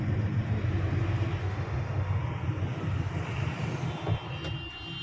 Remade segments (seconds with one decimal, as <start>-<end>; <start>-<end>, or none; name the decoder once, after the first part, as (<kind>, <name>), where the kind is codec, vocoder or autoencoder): 1.4-2.2 (autoencoder, DAC-VAE)